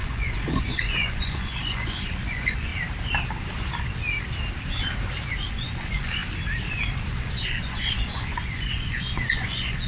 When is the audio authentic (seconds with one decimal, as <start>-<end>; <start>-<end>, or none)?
2.7-5.5; 6.2-7.1